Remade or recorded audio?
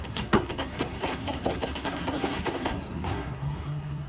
remade